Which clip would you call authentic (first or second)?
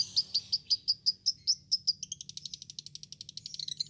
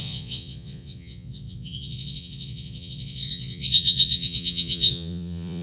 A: first